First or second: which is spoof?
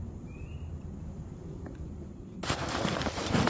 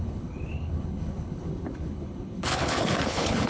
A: second